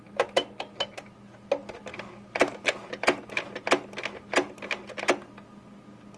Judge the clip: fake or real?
real